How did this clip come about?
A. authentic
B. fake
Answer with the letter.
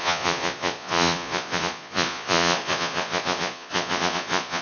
B